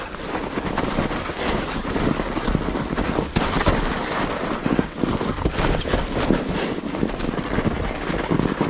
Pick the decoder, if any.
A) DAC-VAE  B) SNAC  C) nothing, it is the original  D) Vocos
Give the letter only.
C